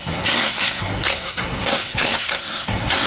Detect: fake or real fake